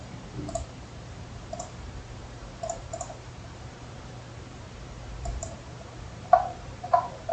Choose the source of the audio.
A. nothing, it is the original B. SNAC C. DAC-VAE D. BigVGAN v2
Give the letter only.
D